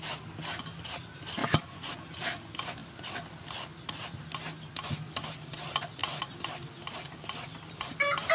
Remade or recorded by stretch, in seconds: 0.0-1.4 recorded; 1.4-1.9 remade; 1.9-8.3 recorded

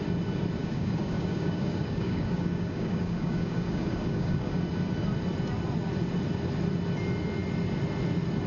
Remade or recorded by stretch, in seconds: 0.0-0.6 recorded; 0.6-4.6 remade; 4.6-8.5 recorded

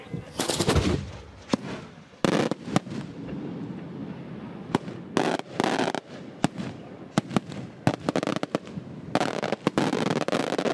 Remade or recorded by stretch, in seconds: 0.0-10.7 recorded

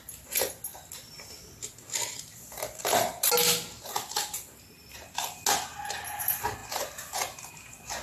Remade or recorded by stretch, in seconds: 0.0-8.0 recorded

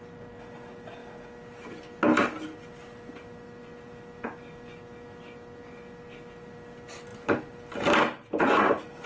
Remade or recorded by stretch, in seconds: 0.0-9.1 recorded

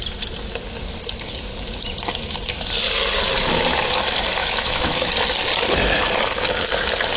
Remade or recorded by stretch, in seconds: 0.0-4.4 recorded; 4.4-5.1 remade; 5.1-7.2 recorded

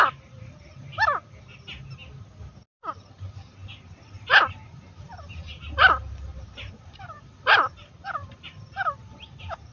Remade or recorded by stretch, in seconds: 0.0-1.2 remade; 1.2-2.8 recorded; 2.8-9.7 remade

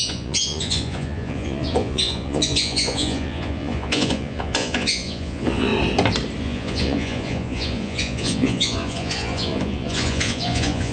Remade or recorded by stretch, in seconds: 0.0-5.7 remade; 5.7-6.4 recorded; 6.4-10.9 remade